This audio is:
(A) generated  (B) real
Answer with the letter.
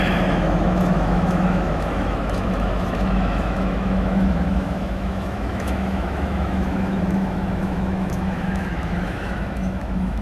A